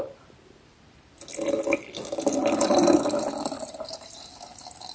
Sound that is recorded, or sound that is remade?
recorded